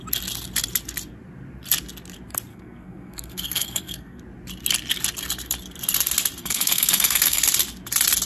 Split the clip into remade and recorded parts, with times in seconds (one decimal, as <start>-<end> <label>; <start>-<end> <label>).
0.0-2.5 recorded; 2.5-4.2 remade; 4.2-6.4 recorded; 6.4-7.4 remade; 7.4-8.3 recorded